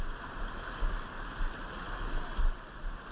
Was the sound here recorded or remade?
recorded